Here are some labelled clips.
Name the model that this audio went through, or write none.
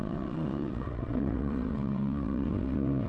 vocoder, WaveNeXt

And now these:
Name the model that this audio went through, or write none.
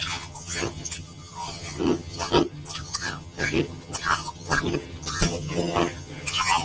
vocoder, HiFi-GAN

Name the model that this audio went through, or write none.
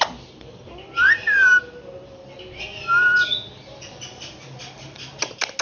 none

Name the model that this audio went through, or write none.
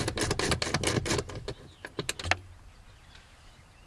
none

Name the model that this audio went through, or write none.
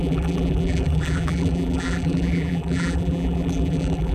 vocoder, BigVGAN v2